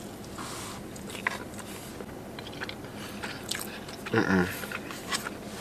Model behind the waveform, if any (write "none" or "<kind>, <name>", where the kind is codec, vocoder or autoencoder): none